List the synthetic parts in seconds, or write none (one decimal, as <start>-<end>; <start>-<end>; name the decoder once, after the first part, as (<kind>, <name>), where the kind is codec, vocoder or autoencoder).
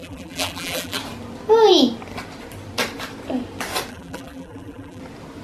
0.0-1.0 (vocoder, BigVGAN v2); 3.9-5.0